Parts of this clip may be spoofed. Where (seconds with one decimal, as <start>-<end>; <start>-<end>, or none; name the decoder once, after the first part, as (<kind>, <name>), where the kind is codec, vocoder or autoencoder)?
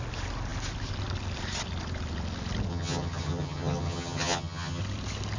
2.7-4.8 (vocoder, HiFi-GAN)